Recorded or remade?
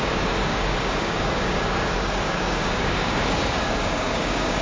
remade